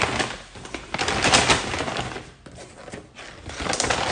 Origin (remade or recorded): recorded